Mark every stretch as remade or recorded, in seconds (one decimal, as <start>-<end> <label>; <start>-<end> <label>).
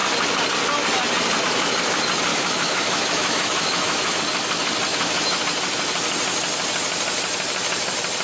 0.0-2.3 recorded; 2.3-4.2 remade; 4.2-4.9 recorded; 4.9-5.4 remade; 5.4-8.2 recorded